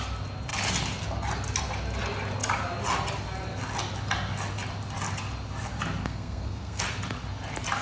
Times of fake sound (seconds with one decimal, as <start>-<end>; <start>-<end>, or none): 6.0-6.8